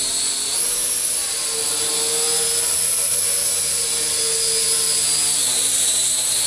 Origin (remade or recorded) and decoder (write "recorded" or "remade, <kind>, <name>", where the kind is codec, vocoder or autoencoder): recorded